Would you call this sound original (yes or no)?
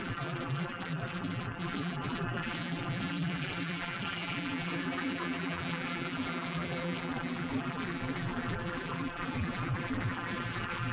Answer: no